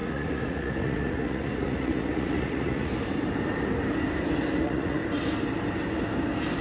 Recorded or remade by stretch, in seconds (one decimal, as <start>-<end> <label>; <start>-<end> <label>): 0.0-2.9 remade; 2.9-4.6 recorded; 4.6-5.0 remade; 5.0-6.6 recorded